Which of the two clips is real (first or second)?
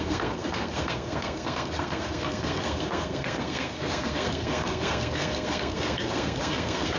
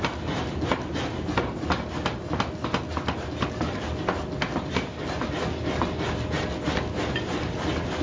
second